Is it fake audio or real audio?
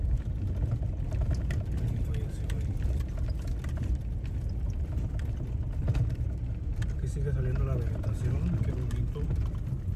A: real